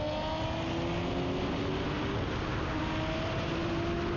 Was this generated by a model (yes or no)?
no